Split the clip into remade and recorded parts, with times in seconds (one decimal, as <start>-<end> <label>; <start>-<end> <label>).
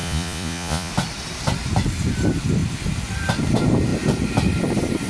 0.0-0.9 remade; 0.9-5.1 recorded